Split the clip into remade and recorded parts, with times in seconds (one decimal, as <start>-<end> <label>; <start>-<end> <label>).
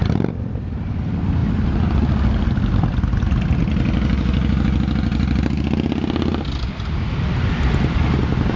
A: 0.0-8.6 recorded